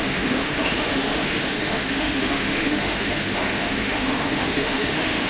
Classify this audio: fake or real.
fake